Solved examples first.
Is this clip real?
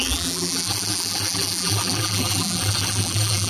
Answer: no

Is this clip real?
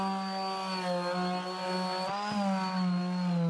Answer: yes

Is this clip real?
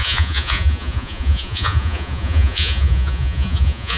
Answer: no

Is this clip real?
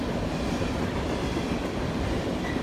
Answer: yes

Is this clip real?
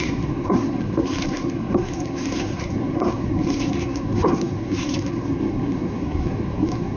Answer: no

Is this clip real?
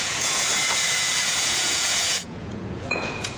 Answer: no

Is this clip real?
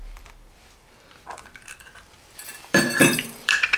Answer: no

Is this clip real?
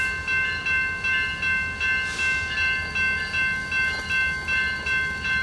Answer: yes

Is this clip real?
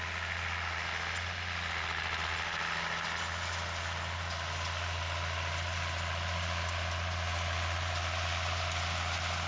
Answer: yes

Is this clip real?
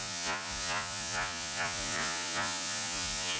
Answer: no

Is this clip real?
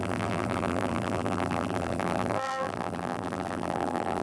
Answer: no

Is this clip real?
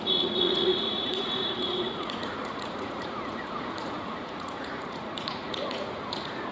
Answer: no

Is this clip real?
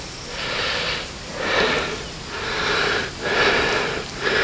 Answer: yes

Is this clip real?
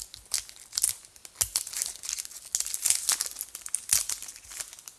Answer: yes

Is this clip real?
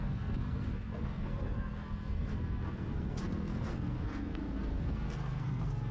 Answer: no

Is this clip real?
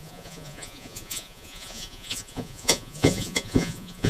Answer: no